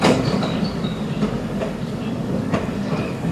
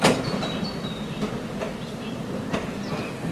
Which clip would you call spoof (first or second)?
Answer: first